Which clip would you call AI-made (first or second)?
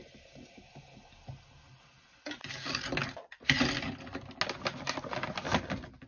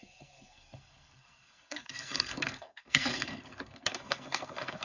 second